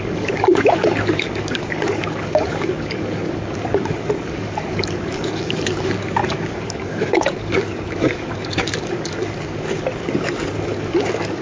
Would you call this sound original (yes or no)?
no